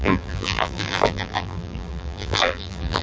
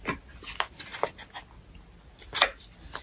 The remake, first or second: first